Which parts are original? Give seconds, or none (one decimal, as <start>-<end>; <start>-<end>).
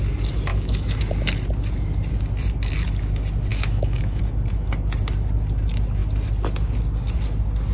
0.0-0.5; 1.0-3.5; 4.2-7.7